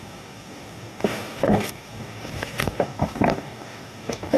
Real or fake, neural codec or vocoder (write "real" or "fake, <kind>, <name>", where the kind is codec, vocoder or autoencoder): fake, codec, DAC